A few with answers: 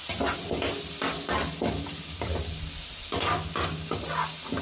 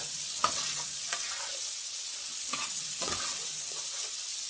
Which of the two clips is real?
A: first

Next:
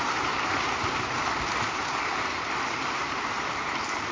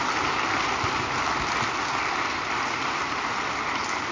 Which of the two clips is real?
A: second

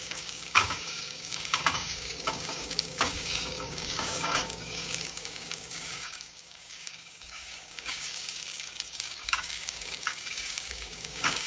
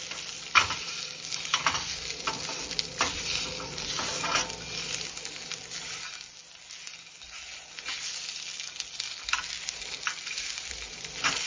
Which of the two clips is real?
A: second